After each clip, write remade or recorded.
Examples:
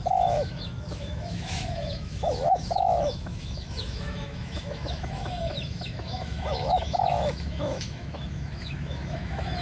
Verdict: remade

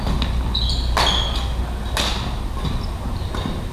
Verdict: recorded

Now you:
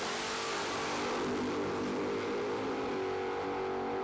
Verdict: recorded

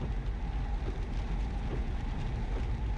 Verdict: recorded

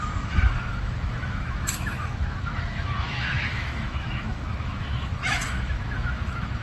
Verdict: remade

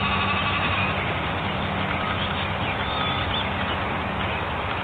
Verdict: recorded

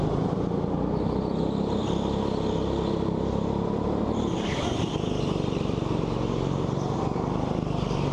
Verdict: recorded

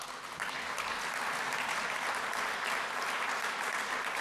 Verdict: recorded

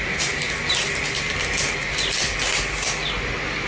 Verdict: recorded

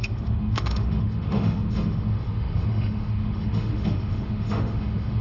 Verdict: remade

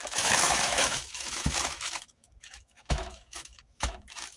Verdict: remade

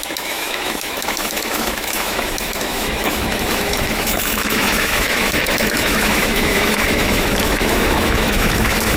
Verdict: remade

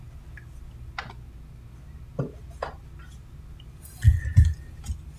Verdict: recorded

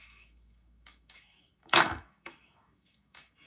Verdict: remade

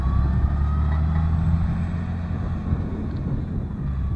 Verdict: recorded